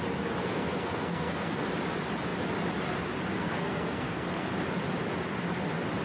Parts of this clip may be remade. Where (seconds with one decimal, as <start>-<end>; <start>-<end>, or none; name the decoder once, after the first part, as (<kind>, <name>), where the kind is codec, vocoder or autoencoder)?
0.4-1.6 (codec, SNAC); 3.4-4.5